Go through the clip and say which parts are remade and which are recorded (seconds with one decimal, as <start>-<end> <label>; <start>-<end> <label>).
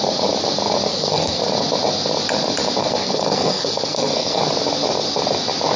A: 0.0-0.9 recorded; 0.9-1.4 remade; 1.4-2.8 recorded; 2.8-4.4 remade; 4.4-5.8 recorded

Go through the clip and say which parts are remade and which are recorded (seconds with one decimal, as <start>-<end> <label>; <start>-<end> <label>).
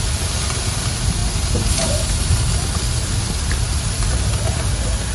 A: 0.0-5.1 recorded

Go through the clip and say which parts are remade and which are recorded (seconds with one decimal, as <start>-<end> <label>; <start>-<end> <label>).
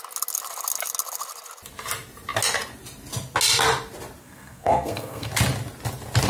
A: 0.0-4.2 recorded; 4.2-5.3 remade; 5.3-6.3 recorded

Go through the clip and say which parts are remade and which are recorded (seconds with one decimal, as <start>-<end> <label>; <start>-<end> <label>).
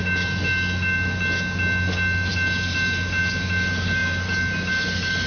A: 0.0-5.3 recorded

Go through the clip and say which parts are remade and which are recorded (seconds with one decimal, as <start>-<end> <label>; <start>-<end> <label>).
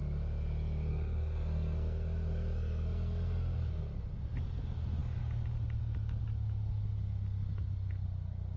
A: 0.0-0.9 recorded; 0.9-3.8 remade; 3.8-8.6 recorded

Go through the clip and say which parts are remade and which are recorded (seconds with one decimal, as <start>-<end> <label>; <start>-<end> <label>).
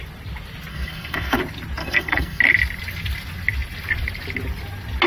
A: 0.0-0.7 recorded; 0.7-1.4 remade; 1.4-1.8 recorded; 1.8-2.4 remade; 2.4-5.1 recorded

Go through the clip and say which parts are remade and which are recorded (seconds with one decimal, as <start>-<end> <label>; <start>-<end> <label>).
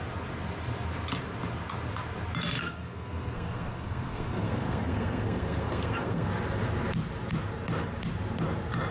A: 0.0-2.6 recorded; 2.6-6.3 remade; 6.3-8.9 recorded